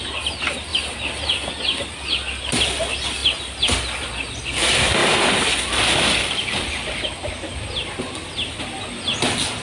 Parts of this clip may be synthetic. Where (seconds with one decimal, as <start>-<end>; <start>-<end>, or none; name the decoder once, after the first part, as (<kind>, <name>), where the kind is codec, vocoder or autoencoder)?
0.7-1.5 (vocoder, BigVGAN v2)